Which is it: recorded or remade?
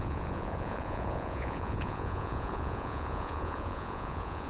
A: remade